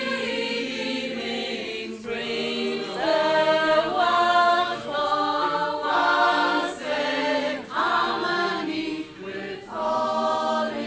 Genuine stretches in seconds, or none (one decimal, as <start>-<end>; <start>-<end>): 0.0-3.1; 5.0-10.9